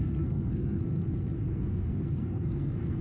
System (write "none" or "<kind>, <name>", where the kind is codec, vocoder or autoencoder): codec, SNAC